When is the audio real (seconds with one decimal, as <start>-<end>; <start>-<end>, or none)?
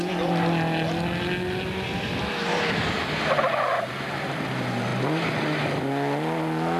0.0-6.8